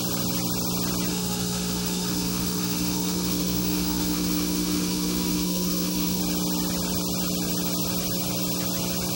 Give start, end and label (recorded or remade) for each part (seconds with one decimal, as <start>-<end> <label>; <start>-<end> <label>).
0.0-1.1 recorded; 1.1-6.2 remade; 6.2-9.1 recorded